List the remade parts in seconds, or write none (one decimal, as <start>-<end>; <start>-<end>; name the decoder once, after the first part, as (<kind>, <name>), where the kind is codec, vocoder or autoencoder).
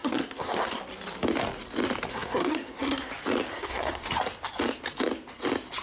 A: 0.0-0.8 (codec, SNAC); 2.1-3.1; 3.5-4.1